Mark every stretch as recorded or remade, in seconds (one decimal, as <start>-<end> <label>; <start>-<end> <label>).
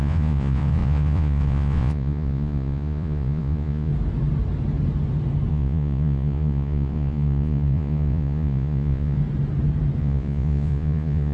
0.0-3.9 remade; 3.9-5.5 recorded; 5.5-9.2 remade; 9.2-10.0 recorded; 10.0-11.3 remade